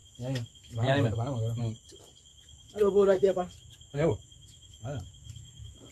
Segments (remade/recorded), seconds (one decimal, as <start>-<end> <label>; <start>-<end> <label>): 0.0-1.6 remade; 1.6-2.3 recorded; 2.3-5.9 remade